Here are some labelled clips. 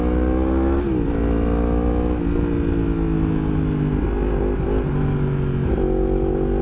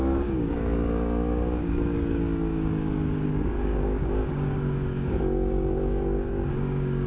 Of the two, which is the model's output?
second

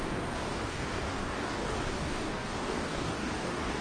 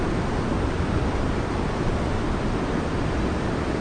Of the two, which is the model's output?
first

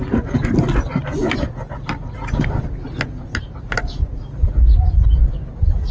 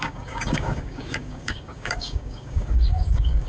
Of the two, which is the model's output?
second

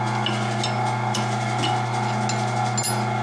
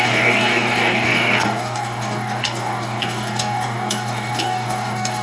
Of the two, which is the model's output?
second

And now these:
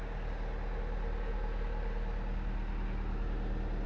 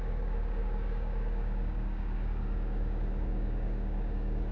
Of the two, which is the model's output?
second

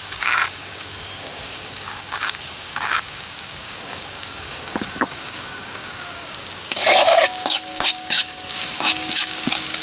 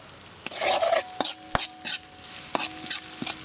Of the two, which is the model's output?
first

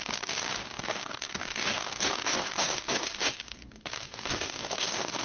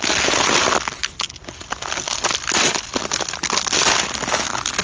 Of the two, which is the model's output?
first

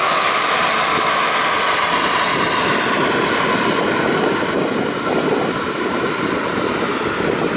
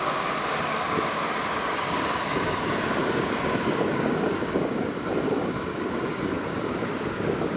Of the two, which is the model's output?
second